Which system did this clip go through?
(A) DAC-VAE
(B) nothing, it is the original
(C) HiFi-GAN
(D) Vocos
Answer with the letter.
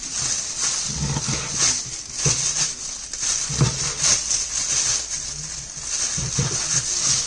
B